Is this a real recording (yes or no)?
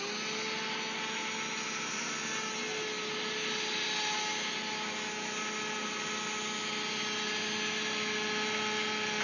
yes